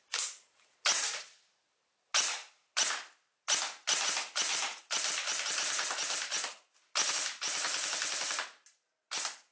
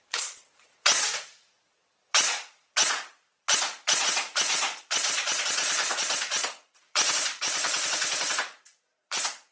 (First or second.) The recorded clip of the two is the first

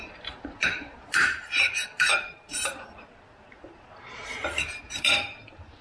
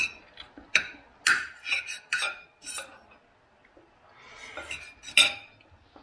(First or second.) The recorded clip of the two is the second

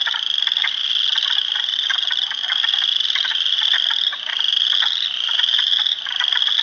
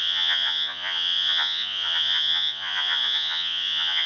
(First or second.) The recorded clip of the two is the first